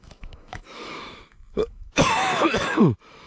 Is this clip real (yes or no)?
no